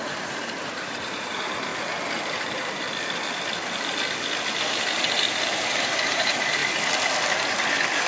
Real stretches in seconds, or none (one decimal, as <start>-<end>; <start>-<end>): 1.7-4.5; 6.6-8.1